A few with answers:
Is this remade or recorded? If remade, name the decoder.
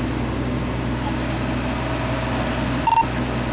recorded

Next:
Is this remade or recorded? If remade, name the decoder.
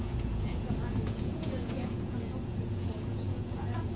remade, vocoder, Vocos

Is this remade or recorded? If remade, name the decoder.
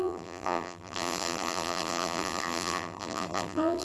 remade, vocoder, BigVGAN v2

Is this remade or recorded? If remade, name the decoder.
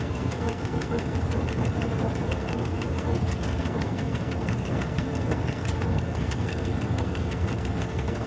remade, codec, SNAC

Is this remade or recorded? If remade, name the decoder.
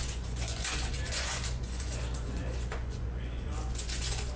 remade, vocoder, Vocos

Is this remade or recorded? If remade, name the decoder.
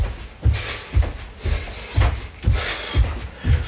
recorded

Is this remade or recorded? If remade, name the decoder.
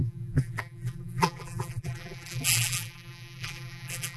remade, vocoder, BigVGAN v2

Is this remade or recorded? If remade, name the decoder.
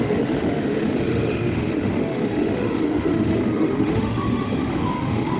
remade, autoencoder, DAC-VAE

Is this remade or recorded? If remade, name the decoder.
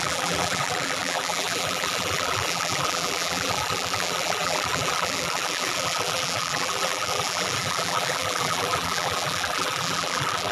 remade, vocoder, BigVGAN v2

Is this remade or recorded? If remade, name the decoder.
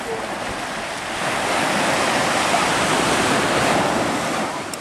recorded